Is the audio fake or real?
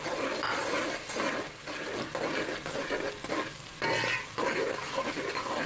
real